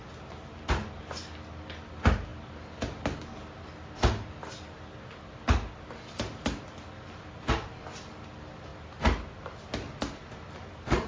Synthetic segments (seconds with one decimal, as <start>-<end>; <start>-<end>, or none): none